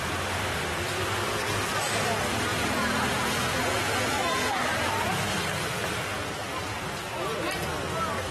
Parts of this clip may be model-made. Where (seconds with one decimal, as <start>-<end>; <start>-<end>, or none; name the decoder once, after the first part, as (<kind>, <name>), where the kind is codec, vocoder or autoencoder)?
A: 2.5-4.9 (vocoder, Vocos)